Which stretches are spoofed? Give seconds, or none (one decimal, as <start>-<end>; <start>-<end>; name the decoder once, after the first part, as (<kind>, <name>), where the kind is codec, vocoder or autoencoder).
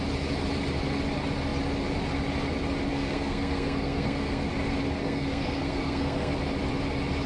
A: 2.9-4.5 (codec, SNAC); 5.0-6.4